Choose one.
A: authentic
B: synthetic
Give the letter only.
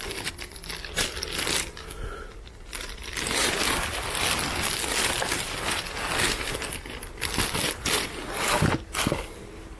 A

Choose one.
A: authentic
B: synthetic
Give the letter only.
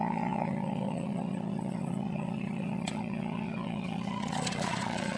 B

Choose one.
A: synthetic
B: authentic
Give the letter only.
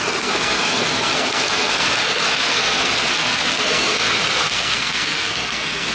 A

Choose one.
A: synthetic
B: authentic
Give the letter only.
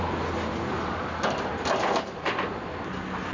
B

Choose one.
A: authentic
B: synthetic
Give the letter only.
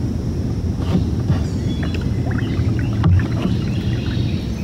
A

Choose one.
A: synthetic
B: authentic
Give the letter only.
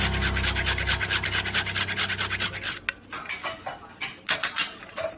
B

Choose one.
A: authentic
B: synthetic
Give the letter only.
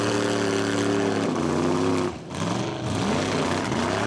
A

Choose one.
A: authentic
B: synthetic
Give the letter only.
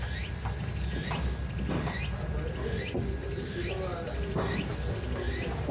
A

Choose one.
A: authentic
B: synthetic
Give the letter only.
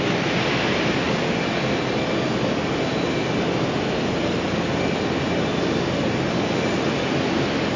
A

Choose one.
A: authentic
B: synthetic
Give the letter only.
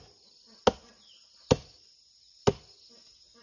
A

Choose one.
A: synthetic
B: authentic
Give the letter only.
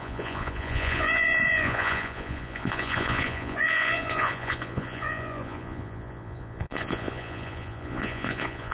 A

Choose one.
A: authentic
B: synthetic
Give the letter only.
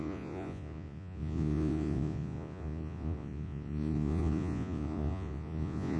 B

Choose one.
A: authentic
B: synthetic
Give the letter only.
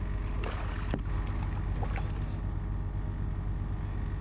A